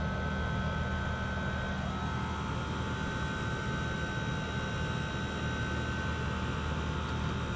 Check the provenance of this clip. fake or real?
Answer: real